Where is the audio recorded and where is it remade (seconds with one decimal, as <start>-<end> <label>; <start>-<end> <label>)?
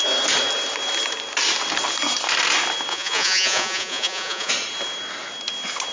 0.0-2.9 recorded; 2.9-4.5 remade; 4.5-5.9 recorded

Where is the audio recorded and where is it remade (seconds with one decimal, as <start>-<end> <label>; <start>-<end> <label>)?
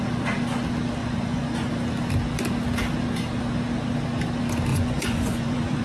0.0-1.0 recorded; 1.0-1.7 remade; 1.7-4.7 recorded; 4.7-5.8 remade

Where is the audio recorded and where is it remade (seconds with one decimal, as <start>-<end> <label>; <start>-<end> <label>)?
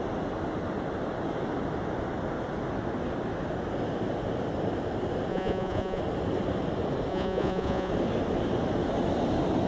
0.0-5.3 recorded; 5.3-6.0 remade; 6.0-7.1 recorded; 7.1-7.9 remade; 7.9-9.7 recorded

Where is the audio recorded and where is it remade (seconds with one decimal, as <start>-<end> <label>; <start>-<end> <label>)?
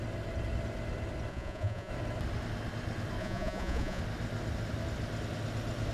0.0-1.3 recorded; 1.3-1.9 remade; 1.9-3.2 recorded; 3.2-4.0 remade; 4.0-5.9 recorded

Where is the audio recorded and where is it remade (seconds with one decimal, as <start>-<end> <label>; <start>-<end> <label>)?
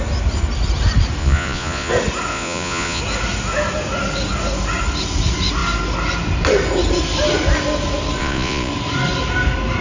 0.0-1.2 recorded; 1.2-1.9 remade; 1.9-2.3 recorded; 2.3-3.0 remade; 3.0-8.2 recorded; 8.2-8.7 remade; 8.7-9.8 recorded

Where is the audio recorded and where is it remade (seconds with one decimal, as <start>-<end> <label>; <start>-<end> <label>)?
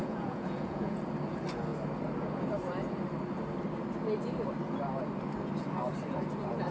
0.0-1.0 remade; 1.0-6.7 recorded